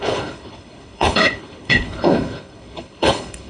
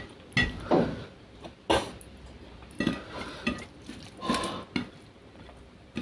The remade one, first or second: first